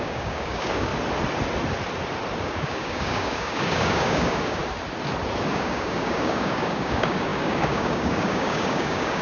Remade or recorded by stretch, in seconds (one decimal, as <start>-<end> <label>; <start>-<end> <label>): 0.0-0.9 remade; 0.9-2.4 recorded; 2.4-4.6 remade; 4.6-5.5 recorded; 5.5-9.2 remade